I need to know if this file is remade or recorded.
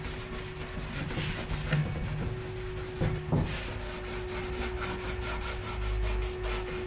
recorded